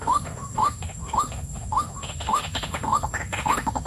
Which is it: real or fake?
fake